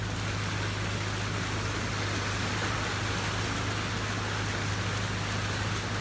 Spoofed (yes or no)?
no